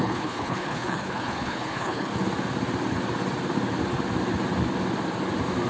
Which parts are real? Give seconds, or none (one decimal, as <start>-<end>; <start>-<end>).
2.1-5.7